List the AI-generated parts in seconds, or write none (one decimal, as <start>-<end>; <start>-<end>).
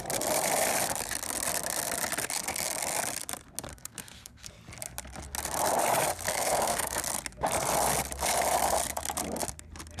3.7-4.5; 6.3-7.0